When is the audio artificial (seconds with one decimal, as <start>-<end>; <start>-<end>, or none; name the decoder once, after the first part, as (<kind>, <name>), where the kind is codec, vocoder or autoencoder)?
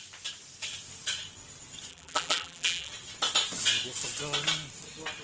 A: 1.9-2.9 (vocoder, BigVGAN v2)